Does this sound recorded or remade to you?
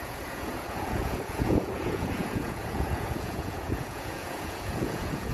remade